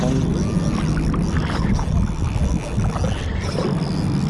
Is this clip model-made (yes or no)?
no